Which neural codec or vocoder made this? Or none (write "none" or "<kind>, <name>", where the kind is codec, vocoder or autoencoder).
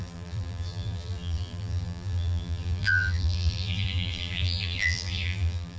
vocoder, BigVGAN v2